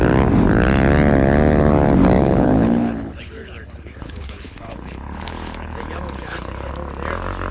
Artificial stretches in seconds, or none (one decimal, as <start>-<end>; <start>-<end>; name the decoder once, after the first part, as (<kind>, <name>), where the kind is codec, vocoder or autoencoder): 2.2-6.7 (codec, HILCodec)